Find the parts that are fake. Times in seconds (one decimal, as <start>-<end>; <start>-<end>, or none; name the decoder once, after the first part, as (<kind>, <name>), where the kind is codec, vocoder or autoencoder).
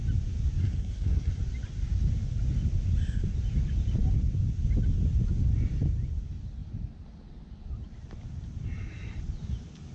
0.6-1.4 (codec, SNAC)